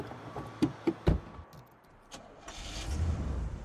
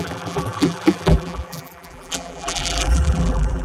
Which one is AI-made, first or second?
second